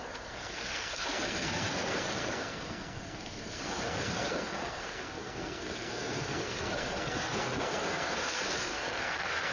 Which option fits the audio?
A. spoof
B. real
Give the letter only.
A